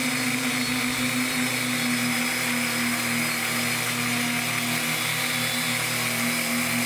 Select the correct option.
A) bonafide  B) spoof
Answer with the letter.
A